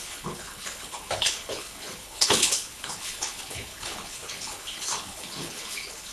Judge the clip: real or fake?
fake